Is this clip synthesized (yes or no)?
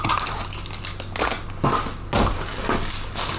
no